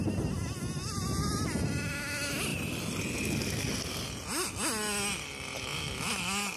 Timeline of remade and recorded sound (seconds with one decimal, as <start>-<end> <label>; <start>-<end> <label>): 0.0-6.6 recorded